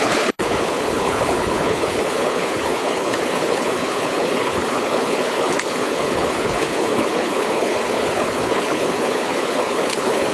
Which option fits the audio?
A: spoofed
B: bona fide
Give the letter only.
A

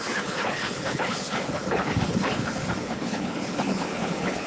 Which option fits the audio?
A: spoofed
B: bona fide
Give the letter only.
A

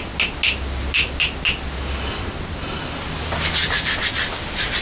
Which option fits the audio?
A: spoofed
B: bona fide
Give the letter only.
B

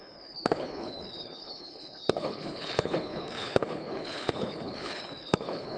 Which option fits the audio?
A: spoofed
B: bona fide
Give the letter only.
A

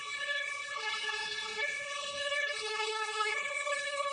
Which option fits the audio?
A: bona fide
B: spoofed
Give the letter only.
B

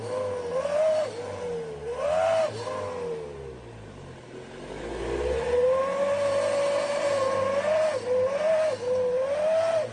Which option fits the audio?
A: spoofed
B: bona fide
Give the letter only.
B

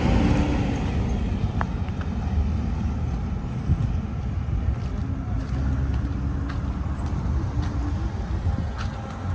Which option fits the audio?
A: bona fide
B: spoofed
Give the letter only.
A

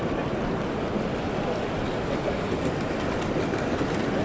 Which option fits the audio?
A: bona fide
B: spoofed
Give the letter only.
A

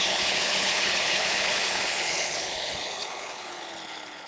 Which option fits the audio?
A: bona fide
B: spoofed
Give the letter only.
B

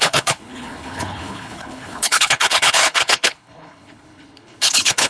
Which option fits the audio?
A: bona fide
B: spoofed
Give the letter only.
B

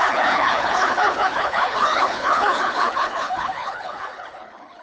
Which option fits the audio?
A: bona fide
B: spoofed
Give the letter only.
B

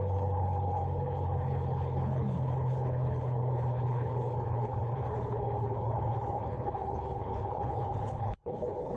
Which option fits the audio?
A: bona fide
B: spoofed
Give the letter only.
B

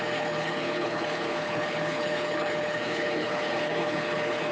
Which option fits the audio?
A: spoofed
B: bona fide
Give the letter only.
A